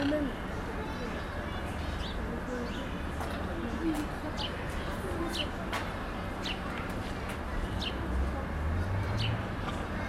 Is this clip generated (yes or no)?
no